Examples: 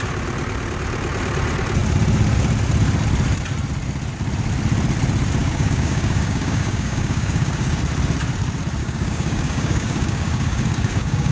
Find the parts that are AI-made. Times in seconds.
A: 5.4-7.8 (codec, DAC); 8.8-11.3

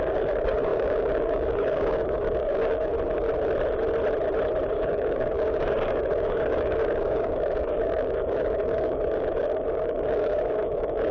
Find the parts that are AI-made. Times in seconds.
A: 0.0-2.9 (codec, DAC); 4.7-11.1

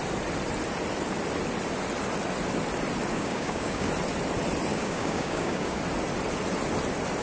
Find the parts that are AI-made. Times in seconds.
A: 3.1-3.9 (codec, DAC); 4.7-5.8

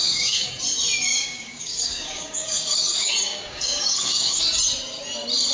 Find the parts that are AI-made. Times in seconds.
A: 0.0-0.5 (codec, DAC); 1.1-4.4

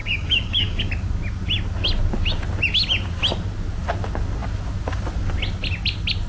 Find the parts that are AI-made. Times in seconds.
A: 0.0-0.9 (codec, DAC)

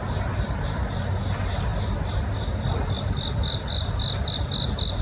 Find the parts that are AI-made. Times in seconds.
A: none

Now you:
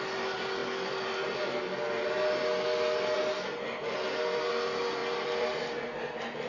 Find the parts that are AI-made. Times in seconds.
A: none

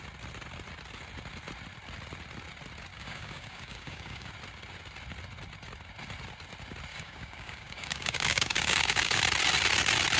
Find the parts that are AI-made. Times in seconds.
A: 2.9-4.3 (codec, DAC); 6.9-9.2